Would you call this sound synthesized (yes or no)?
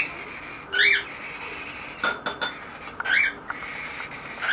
no